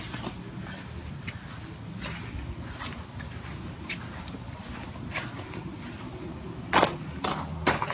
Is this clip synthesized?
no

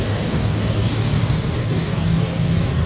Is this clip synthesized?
yes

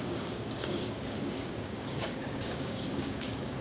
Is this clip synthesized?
yes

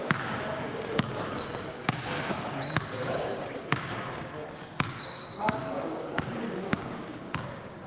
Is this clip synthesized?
yes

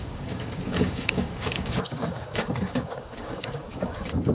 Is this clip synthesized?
yes